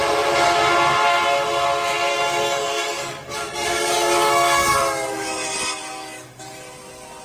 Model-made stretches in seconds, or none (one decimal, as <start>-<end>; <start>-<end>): 2.1-6.4